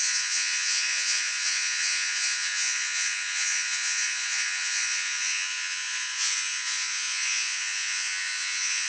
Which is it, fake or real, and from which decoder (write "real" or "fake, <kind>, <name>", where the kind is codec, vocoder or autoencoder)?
fake, vocoder, Vocos